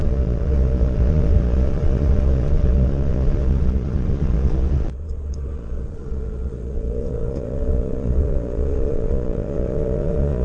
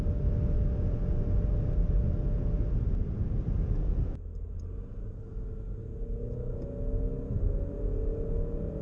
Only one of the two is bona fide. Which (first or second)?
second